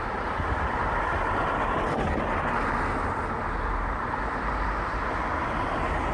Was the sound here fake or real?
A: real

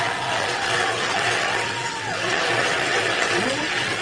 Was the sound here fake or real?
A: fake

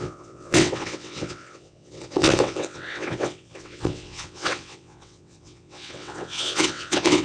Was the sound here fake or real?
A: fake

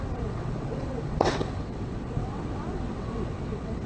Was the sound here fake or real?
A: fake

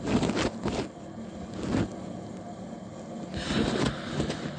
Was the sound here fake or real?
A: real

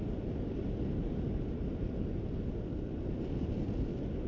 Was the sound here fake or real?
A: real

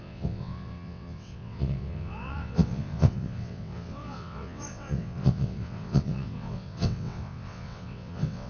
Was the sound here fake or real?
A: fake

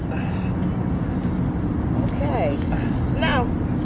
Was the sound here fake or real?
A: real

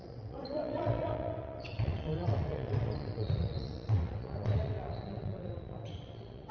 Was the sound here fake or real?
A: fake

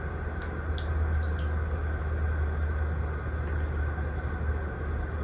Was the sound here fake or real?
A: real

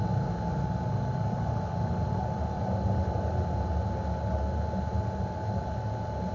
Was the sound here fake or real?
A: real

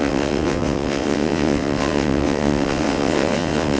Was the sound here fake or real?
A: fake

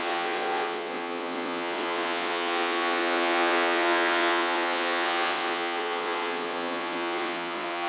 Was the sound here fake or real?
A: fake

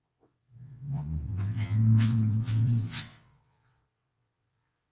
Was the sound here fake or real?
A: fake